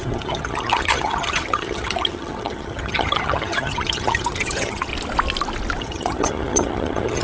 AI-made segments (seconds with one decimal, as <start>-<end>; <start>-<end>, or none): 0.0-4.9; 5.8-7.2